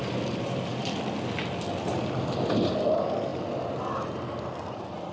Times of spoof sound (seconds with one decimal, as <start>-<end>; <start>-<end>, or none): none